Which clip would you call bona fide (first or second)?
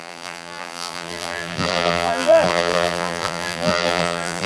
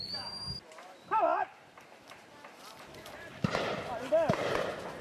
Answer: second